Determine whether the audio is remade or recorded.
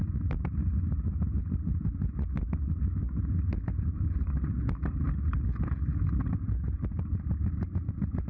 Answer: recorded